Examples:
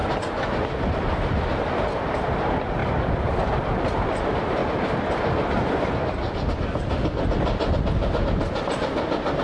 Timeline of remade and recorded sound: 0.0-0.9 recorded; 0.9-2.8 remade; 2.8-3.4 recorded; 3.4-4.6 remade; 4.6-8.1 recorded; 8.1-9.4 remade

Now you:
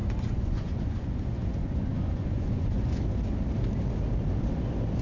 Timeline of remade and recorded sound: 0.0-3.0 remade; 3.0-5.0 recorded

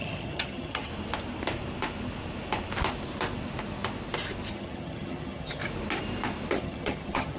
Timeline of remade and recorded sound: 0.0-0.9 remade; 0.9-4.5 recorded; 4.5-5.6 remade; 5.6-6.5 recorded; 6.5-7.4 remade

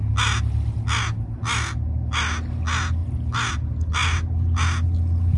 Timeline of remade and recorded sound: 0.0-5.4 recorded

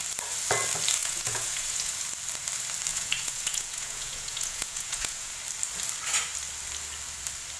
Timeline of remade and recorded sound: 0.0-1.0 recorded; 1.0-1.9 remade; 1.9-2.9 recorded; 2.9-5.3 remade; 5.3-7.6 recorded

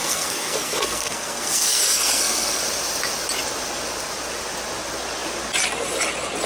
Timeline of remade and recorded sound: 0.0-2.6 remade; 2.6-6.5 recorded

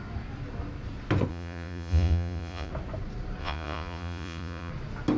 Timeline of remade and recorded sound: 0.0-1.3 recorded; 1.3-2.7 remade; 2.7-3.4 recorded; 3.4-4.7 remade; 4.7-5.2 recorded